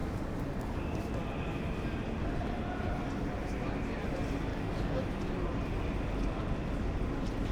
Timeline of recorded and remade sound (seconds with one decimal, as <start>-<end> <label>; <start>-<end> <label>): 0.0-1.0 remade; 1.0-4.5 recorded; 4.5-5.0 remade; 5.0-7.5 recorded